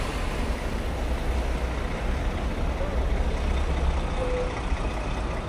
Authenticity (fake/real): real